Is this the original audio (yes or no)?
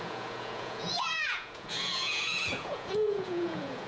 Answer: no